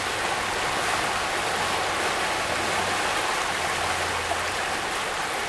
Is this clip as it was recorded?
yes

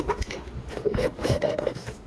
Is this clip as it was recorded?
no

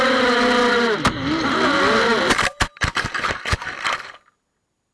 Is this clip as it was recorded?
yes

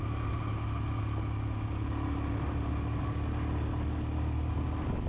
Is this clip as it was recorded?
yes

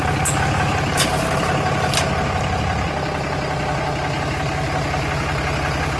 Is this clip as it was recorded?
yes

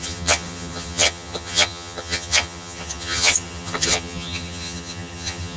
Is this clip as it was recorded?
no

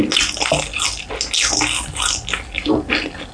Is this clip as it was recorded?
yes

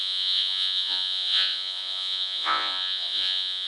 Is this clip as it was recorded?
no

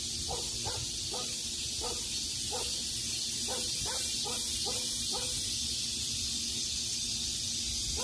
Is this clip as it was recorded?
yes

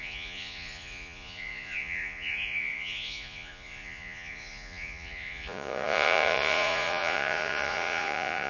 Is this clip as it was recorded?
no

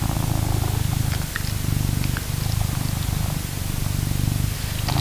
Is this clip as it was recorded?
yes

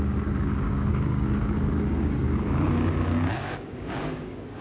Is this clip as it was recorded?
no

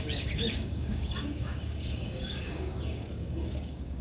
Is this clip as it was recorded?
no